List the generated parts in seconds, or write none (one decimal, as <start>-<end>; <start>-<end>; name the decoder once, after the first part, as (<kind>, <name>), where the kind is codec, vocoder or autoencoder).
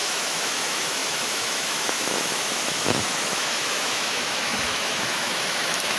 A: 0.0-6.0 (autoencoder, DAC-VAE)